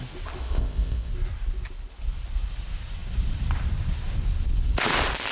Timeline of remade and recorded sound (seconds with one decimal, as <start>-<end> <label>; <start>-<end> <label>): 0.0-0.4 recorded; 0.4-1.1 remade; 1.1-5.3 recorded